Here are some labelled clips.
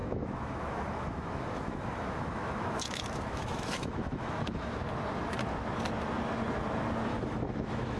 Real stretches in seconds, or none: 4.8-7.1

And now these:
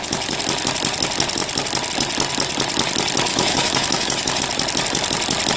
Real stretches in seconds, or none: 0.0-3.3; 4.4-5.6

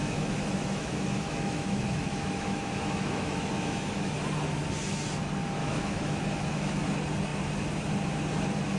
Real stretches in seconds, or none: 4.1-5.6; 6.8-8.8

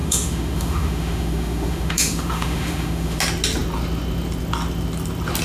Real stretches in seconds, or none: 3.2-5.4

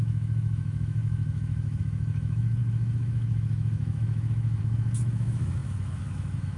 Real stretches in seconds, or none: none

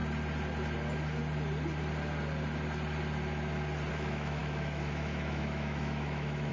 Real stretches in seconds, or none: 0.0-3.9

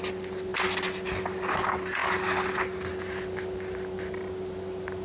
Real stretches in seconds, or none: 0.0-5.0

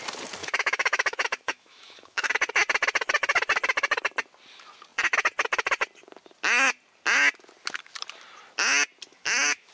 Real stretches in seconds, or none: 0.0-0.4; 2.3-9.1